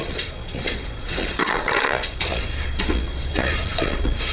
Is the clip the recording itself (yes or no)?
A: no